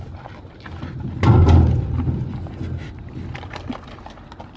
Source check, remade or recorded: recorded